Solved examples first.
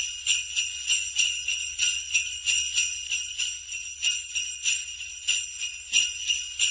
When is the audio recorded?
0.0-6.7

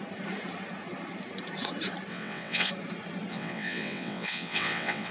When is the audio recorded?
0.0-2.1; 2.7-3.3